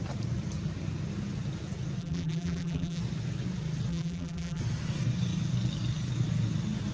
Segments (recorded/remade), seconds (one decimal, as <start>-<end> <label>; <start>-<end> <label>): 0.0-2.0 recorded; 2.0-3.0 remade; 3.0-3.9 recorded; 3.9-4.6 remade; 4.6-6.9 recorded